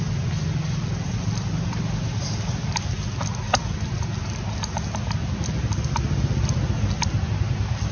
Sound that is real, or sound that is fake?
real